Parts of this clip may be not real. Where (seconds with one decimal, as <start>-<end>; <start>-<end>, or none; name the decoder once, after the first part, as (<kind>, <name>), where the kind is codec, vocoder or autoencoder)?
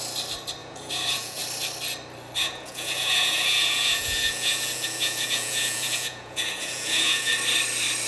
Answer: 0.6-1.4 (vocoder, Vocos); 2.4-7.3